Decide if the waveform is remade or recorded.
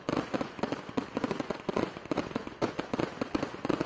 remade